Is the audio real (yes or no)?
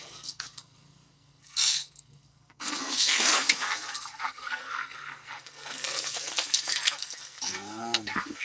no